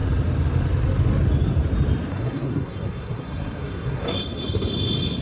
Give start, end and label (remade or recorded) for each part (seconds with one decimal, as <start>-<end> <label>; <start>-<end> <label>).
0.0-2.1 recorded; 2.1-4.2 remade; 4.2-5.2 recorded